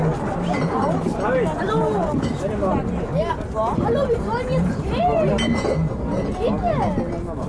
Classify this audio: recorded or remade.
recorded